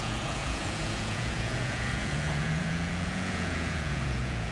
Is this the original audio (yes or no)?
no